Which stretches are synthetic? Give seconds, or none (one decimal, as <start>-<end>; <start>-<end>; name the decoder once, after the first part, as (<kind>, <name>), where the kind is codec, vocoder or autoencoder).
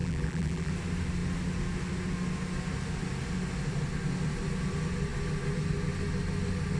0.0-0.7 (vocoder, BigVGAN v2)